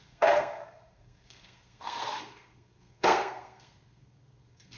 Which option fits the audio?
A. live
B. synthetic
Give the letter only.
B